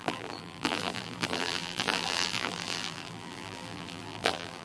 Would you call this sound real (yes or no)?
no